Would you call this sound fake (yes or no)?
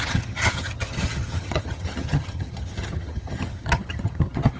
yes